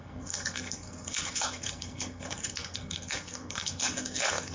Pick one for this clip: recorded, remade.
remade